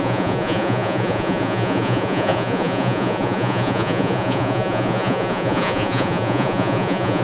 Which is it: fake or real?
fake